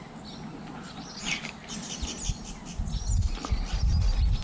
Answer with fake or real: real